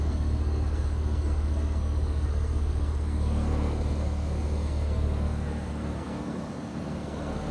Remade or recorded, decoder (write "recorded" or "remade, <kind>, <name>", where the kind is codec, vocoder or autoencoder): remade, codec, SNAC